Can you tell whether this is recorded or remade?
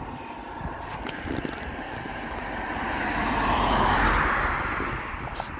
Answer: remade